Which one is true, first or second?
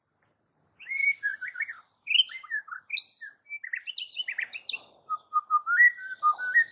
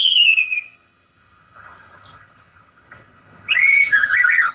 first